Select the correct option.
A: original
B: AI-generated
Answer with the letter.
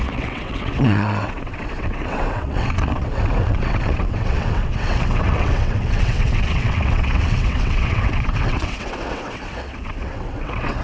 B